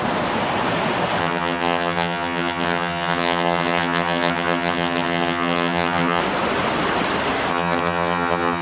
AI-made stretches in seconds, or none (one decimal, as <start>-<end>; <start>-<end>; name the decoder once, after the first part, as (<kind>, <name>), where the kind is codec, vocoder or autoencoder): 1.2-6.2 (vocoder, HiFi-GAN); 7.5-8.6